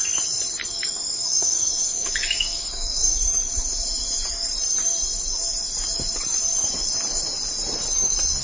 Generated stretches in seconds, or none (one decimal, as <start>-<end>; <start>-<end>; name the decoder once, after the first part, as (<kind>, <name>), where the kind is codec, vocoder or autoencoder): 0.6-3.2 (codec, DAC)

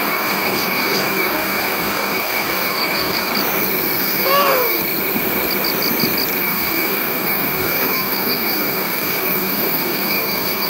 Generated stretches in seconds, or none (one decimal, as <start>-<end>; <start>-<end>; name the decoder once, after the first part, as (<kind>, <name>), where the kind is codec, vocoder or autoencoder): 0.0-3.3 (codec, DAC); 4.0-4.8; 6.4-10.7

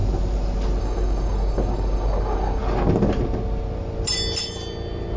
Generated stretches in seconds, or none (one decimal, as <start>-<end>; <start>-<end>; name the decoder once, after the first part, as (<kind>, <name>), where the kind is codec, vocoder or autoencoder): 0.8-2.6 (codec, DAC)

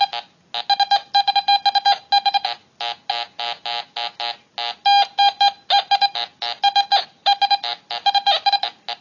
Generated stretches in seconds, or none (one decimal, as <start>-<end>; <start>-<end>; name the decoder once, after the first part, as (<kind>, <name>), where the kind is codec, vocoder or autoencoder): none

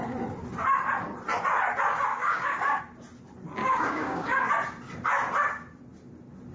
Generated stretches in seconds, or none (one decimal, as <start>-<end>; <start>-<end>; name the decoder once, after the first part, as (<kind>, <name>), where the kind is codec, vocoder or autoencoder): 2.1-2.8 (codec, DAC); 3.6-4.5

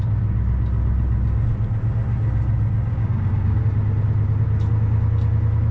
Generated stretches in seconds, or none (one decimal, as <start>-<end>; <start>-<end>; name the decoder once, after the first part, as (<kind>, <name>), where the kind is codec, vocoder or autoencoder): 2.9-3.6 (codec, DAC)

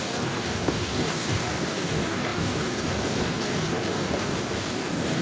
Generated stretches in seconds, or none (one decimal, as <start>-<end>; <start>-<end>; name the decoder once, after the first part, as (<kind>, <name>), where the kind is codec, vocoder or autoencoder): 0.0-5.2 (codec, DAC)